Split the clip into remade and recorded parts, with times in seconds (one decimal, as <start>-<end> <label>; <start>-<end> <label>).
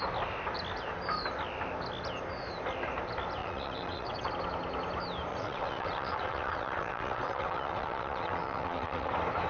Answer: 0.0-3.4 recorded; 3.4-4.3 remade; 4.3-5.3 recorded; 5.3-9.1 remade; 9.1-9.5 recorded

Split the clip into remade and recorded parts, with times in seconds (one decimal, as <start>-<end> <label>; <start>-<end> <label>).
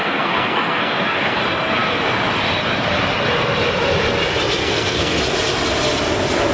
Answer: 0.0-1.4 remade; 1.4-4.6 recorded; 4.6-5.2 remade; 5.2-6.5 recorded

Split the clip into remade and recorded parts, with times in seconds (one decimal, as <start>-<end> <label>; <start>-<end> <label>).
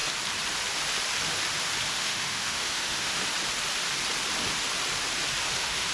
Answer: 0.0-1.9 recorded; 1.9-3.2 remade; 3.2-5.5 recorded; 5.5-5.9 remade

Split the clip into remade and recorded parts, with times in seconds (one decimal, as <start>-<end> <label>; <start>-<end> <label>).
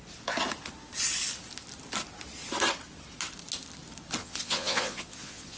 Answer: 0.0-4.2 recorded; 4.2-5.6 remade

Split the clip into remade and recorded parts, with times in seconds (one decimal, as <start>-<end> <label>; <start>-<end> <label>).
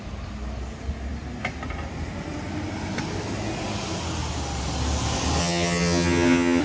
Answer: 0.0-5.4 recorded; 5.4-6.6 remade